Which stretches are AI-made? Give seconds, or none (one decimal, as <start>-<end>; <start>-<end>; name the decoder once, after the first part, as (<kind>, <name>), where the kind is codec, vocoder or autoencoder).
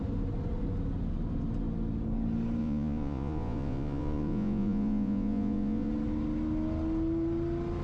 2.6-5.9 (vocoder, Vocos)